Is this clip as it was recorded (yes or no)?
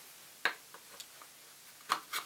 yes